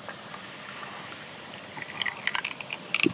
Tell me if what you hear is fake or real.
real